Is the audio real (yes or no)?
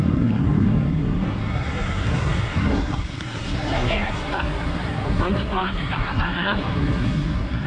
no